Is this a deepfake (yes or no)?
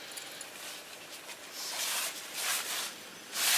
no